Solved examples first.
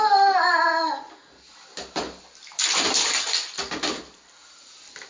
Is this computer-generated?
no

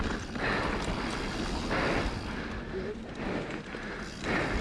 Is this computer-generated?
no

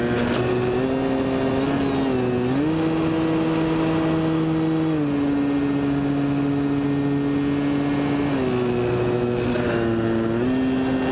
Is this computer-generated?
no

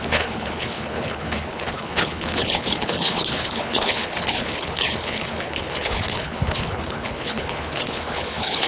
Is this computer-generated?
yes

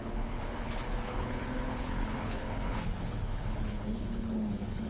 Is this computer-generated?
yes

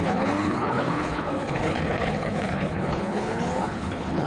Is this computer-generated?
yes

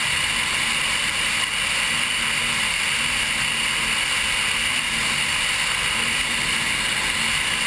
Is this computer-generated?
no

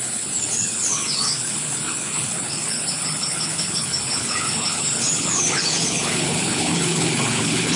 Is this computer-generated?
yes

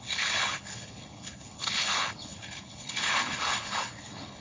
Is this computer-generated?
yes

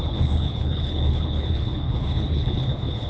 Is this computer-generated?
yes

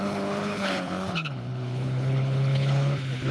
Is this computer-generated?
yes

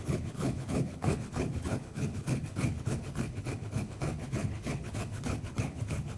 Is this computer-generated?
yes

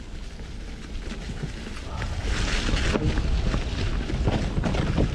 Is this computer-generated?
no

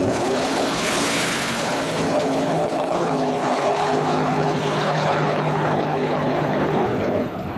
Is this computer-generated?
yes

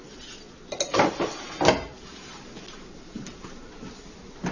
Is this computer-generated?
no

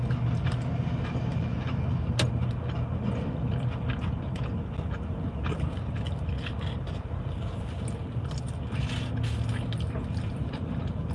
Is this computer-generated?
no